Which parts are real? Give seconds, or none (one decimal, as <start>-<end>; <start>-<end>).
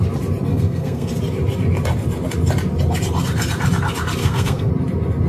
0.0-0.5; 1.1-4.2; 4.7-5.3